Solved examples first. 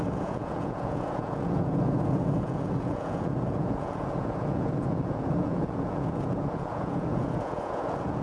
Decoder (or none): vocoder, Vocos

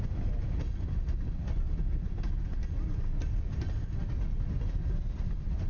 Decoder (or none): none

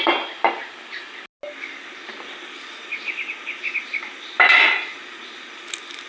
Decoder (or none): none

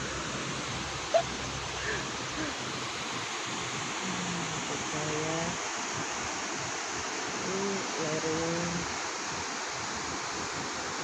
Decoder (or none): none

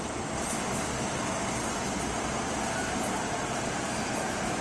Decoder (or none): none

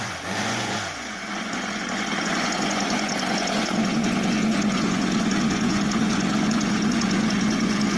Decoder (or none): vocoder, Vocos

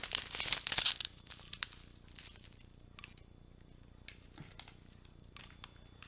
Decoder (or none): none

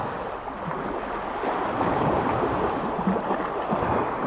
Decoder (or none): none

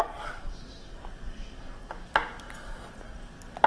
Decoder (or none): none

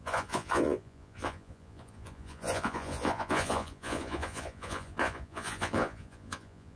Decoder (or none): vocoder, Vocos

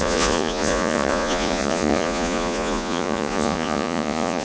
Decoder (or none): vocoder, Vocos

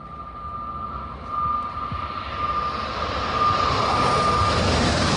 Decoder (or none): none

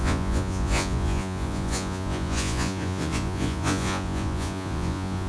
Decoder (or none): vocoder, Vocos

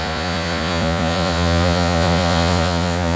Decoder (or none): vocoder, Vocos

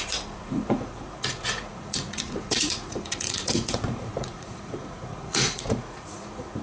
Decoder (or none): vocoder, Vocos